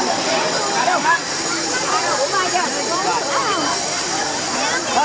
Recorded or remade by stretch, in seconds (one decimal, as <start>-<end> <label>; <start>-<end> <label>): 0.0-5.0 recorded